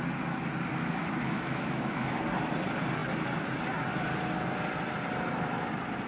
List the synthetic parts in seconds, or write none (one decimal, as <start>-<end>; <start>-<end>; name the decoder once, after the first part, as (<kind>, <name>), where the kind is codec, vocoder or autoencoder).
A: 0.8-2.2 (autoencoder, DAC-VAE)